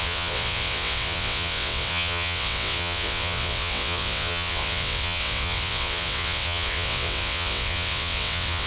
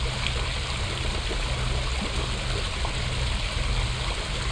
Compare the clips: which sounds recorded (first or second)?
second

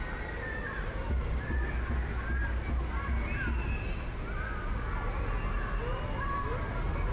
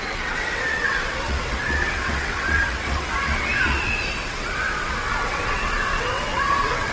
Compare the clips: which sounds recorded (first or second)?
first